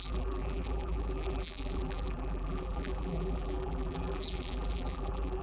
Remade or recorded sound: remade